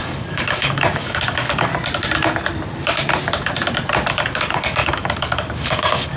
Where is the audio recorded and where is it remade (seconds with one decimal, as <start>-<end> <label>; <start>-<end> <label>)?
0.0-1.7 remade; 1.7-4.2 recorded; 4.2-6.2 remade